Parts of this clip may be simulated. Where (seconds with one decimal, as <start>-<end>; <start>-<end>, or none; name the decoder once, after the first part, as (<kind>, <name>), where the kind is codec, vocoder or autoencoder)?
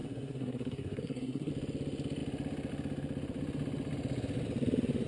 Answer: 0.0-1.5 (codec, SNAC)